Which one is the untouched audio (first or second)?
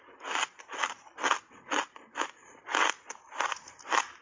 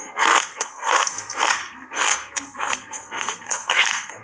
first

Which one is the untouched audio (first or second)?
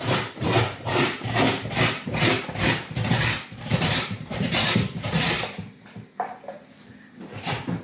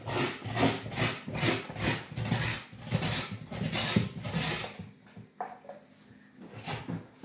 second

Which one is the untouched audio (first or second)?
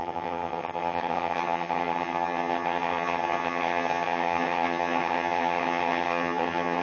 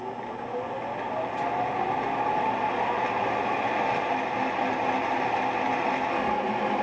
second